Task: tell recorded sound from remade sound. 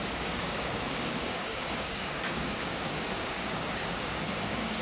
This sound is remade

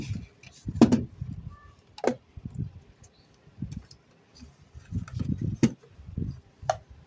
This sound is recorded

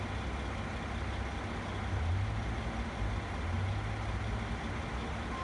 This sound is recorded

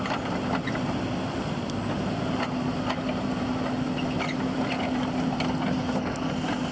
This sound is recorded